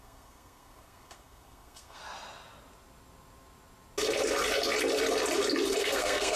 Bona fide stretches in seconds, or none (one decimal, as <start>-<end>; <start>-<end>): 2.0-5.8